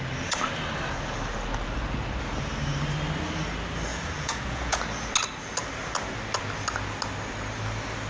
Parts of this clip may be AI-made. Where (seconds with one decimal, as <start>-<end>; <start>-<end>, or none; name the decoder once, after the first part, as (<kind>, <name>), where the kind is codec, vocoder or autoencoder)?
3.9-4.8 (vocoder, Vocos)